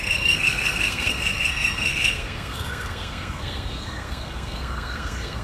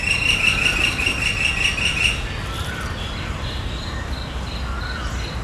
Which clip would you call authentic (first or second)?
second